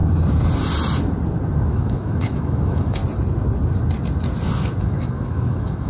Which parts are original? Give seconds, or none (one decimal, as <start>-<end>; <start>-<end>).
0.0-1.7; 3.0-4.8